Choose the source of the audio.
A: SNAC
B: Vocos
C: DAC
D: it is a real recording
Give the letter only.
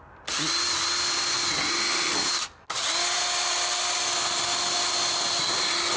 D